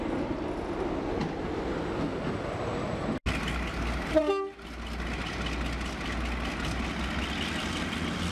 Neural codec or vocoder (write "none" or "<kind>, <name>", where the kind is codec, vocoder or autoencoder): none